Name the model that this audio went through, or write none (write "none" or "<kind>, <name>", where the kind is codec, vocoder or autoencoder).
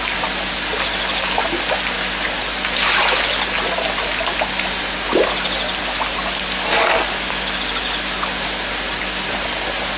none